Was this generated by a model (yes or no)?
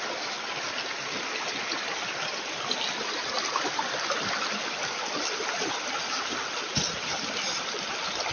no